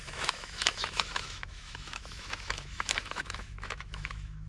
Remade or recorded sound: remade